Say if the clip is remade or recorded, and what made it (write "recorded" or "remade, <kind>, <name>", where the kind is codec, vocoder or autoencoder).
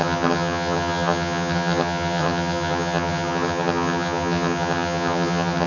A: remade, vocoder, HiFi-GAN